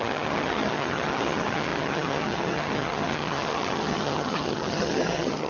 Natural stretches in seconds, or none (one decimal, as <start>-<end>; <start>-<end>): none